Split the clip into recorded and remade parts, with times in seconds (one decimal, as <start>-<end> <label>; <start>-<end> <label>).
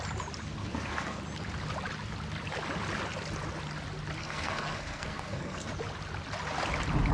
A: 0.0-0.6 recorded; 0.6-1.2 remade; 1.2-4.2 recorded; 4.2-5.7 remade; 5.7-7.1 recorded